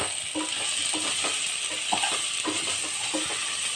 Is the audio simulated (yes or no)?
no